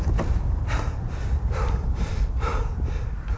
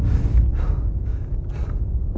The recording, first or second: second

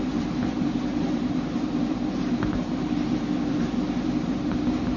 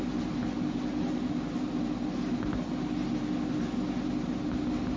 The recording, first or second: second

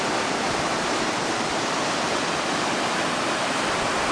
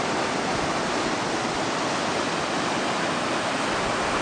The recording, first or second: second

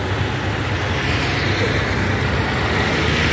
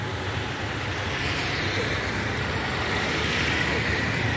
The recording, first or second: first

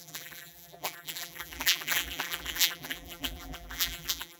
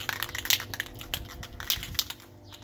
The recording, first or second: second